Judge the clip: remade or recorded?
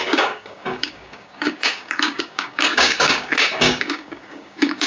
remade